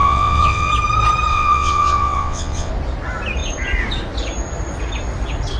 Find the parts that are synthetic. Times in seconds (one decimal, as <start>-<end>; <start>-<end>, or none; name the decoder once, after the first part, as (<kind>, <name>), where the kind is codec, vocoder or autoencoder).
0.0-0.7 (vocoder, WaveNeXt); 1.3-2.7